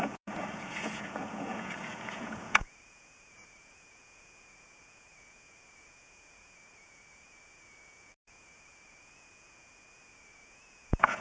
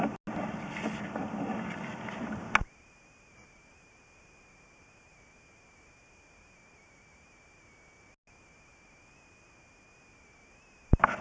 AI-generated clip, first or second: first